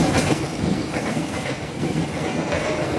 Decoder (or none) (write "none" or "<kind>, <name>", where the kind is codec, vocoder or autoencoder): codec, SNAC